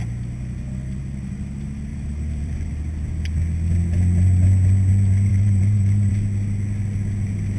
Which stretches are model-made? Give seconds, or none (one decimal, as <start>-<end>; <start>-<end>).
1.9-2.7; 5.3-6.1